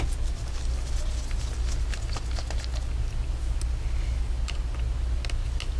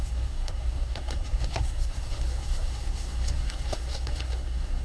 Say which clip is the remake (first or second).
second